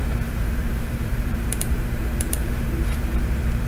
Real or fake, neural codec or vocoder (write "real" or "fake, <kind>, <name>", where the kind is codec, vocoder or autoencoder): fake, vocoder, BigVGAN v2